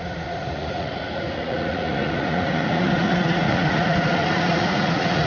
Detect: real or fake fake